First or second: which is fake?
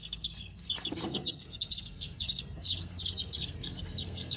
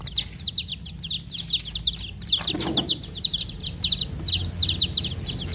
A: first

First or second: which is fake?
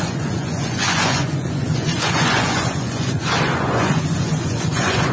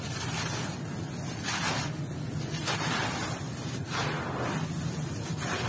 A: first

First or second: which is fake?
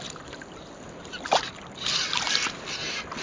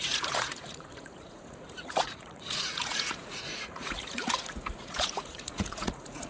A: second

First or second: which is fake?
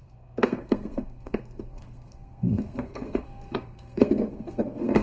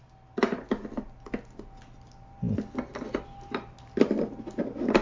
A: first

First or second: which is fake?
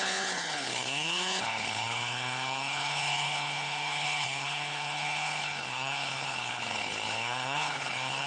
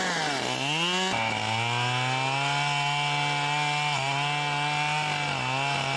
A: first